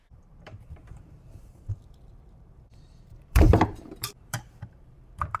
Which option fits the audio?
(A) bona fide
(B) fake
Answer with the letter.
B